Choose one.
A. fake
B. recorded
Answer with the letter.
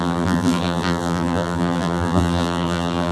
A